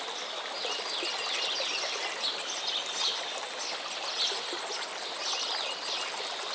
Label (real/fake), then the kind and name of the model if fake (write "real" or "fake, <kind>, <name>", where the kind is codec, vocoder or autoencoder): real